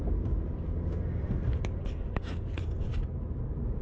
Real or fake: real